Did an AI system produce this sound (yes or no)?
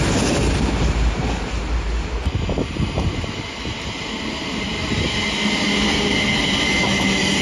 no